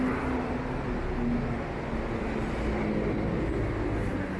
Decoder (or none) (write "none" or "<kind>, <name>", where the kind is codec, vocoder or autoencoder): none